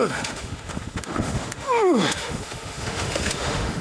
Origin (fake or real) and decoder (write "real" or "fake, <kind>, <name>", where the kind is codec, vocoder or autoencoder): fake, autoencoder, DAC-VAE